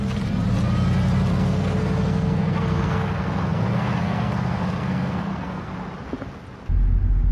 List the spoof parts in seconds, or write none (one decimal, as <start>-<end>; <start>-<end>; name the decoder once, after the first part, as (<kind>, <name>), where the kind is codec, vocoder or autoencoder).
1.3-5.7 (codec, SNAC)